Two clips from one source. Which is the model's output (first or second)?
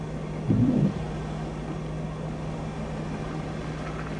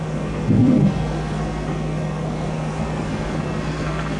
second